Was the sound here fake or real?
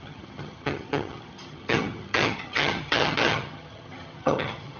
fake